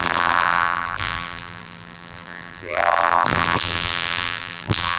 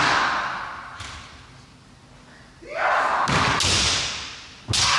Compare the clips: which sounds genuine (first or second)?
second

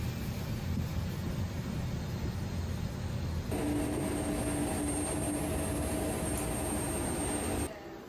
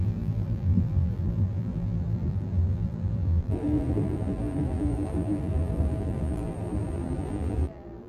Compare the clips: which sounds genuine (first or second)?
first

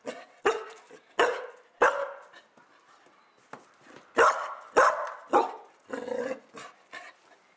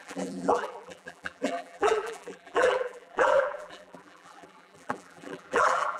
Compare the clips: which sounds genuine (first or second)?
first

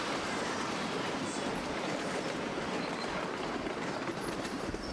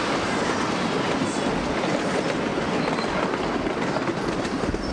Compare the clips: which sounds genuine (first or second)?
second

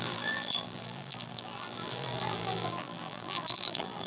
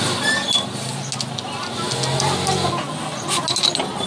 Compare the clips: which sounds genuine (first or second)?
second